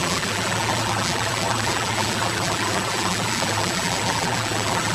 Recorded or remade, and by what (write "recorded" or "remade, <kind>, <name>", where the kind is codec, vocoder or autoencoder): remade, vocoder, BigVGAN v2